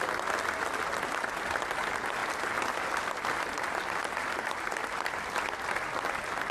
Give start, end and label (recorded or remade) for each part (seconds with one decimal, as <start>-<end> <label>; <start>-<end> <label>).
0.0-6.5 recorded